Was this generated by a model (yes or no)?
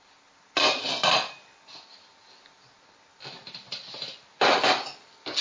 no